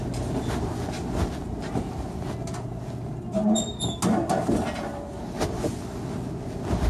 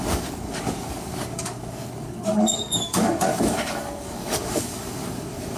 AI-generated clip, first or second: second